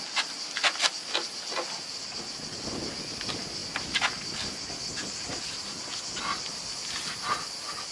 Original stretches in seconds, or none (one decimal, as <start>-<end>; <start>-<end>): 0.0-7.9